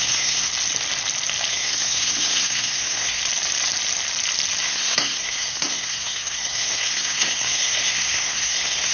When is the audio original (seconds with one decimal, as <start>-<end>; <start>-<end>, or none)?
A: 0.5-1.5; 3.2-4.6